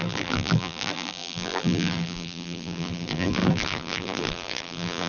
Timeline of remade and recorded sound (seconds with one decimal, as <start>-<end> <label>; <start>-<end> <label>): 0.0-5.1 remade